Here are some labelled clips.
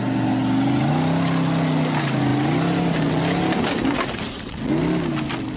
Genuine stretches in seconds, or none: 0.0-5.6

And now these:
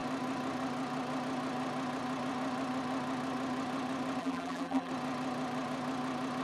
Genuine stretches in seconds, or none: 0.0-4.2; 4.9-6.4

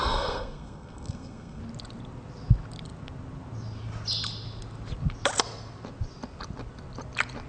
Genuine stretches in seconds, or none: 1.6-7.5

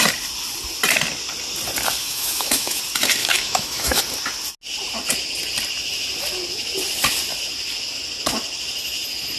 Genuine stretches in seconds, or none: 0.0-2.0; 2.8-3.2; 4.0-9.4